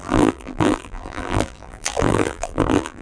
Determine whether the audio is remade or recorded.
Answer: remade